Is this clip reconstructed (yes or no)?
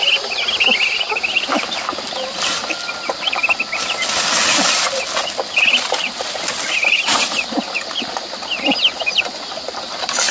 no